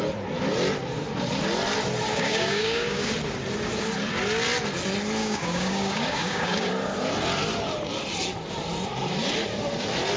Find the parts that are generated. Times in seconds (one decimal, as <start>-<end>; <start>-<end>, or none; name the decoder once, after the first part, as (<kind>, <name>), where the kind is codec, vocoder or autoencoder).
2.1-3.1 (codec, DAC); 5.2-6.7